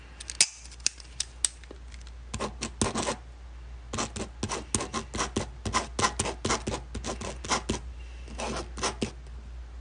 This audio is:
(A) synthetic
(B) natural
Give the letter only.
B